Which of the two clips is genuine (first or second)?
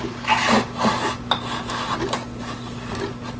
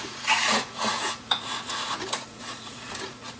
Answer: first